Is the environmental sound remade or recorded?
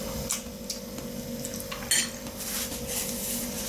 recorded